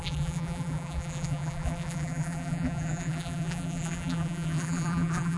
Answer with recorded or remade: remade